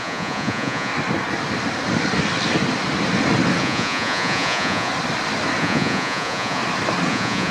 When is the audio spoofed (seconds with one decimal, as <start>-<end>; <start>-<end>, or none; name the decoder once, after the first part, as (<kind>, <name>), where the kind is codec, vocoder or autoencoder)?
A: 0.0-0.9 (vocoder, Vocos); 3.6-4.9; 5.6-6.6; 7.1-7.5